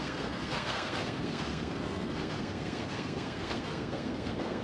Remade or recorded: remade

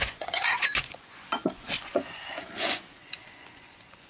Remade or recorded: remade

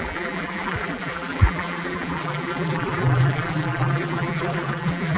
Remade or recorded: remade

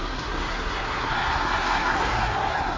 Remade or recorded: remade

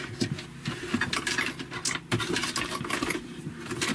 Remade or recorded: remade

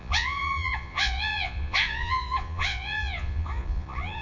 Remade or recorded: remade